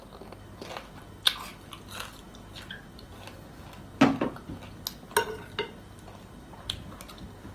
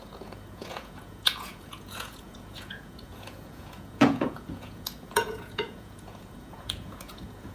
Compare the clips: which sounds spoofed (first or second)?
second